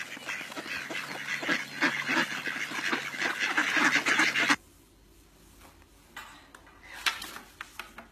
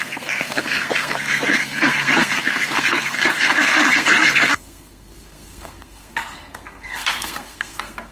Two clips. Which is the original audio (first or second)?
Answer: first